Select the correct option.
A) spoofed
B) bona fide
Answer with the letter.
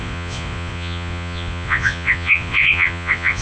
A